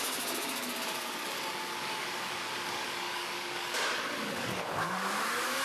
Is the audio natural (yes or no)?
no